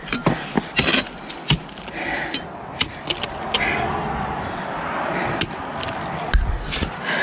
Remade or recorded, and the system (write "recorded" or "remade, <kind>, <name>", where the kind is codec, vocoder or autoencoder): recorded